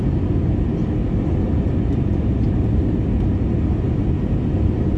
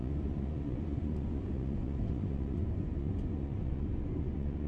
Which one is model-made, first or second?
second